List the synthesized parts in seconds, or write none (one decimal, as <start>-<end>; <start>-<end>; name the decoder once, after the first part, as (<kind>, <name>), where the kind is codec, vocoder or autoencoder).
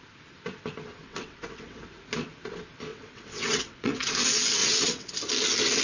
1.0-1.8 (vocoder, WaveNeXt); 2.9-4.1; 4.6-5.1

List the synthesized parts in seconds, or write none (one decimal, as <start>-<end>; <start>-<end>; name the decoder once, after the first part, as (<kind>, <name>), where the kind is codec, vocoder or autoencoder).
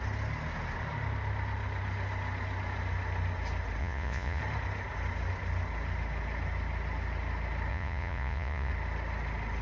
3.8-4.4 (vocoder, Vocos); 7.7-8.7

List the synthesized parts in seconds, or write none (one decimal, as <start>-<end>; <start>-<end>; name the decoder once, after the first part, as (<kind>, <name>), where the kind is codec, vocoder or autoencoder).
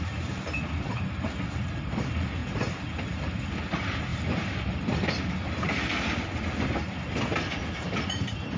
none